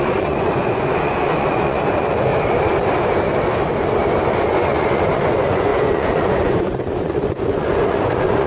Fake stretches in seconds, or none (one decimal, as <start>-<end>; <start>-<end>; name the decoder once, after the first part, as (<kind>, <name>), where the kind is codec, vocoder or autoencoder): 0.0-2.3 (vocoder, Vocos); 4.3-8.5